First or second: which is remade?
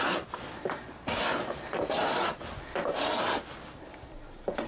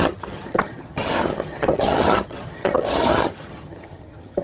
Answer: second